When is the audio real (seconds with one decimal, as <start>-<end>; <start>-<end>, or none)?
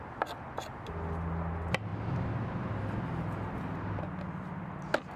0.0-5.2